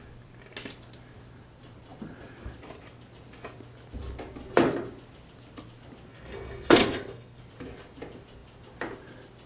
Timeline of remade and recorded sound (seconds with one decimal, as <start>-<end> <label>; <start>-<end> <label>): 0.0-6.1 recorded; 6.1-7.4 remade; 7.4-9.5 recorded